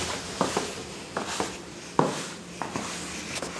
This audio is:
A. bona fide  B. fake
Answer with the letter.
A